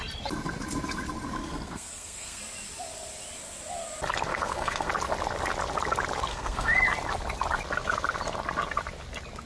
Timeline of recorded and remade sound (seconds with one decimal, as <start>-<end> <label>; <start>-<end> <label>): 0.0-1.4 recorded; 1.4-2.4 remade; 2.4-4.3 recorded; 4.3-4.9 remade; 4.9-6.3 recorded; 6.3-6.8 remade; 6.8-9.5 recorded